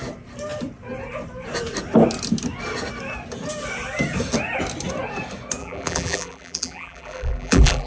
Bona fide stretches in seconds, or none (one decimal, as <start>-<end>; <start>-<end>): 0.0-5.6